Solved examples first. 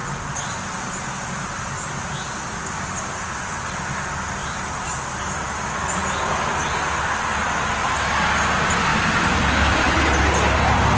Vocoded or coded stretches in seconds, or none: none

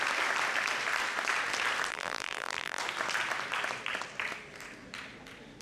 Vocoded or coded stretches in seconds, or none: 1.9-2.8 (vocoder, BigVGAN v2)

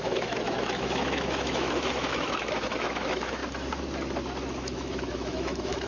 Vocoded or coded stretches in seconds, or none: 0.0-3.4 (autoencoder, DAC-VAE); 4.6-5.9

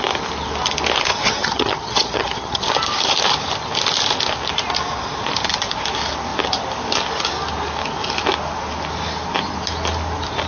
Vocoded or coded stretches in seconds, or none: 1.1-2.7 (vocoder, HiFi-GAN)

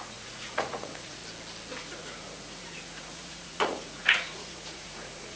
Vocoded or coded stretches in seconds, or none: 0.0-1.2 (vocoder, Vocos); 1.8-5.4